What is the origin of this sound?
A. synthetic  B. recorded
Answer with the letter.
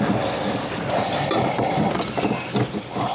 B